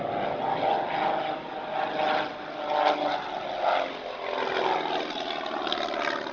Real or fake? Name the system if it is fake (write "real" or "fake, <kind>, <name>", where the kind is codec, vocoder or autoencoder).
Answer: real